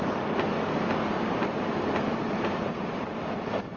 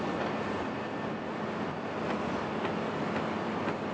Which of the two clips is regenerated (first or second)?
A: first